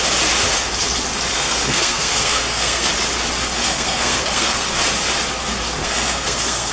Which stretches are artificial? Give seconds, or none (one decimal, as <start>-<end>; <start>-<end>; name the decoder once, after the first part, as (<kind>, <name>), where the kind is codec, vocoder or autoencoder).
1.3-2.9 (codec, SNAC); 3.6-4.7; 5.8-6.7